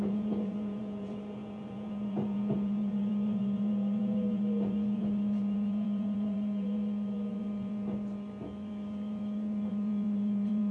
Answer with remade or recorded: remade